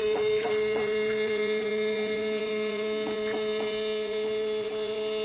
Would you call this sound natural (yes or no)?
no